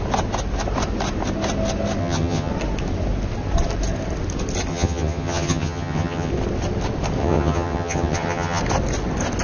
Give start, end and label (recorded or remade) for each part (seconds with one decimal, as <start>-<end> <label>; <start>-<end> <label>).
0.0-2.0 recorded; 2.0-2.5 remade; 2.5-4.7 recorded; 4.7-6.3 remade; 6.3-7.2 recorded; 7.2-8.6 remade; 8.6-9.4 recorded